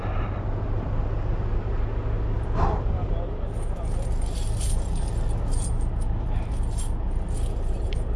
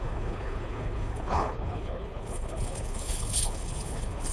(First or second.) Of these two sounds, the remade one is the second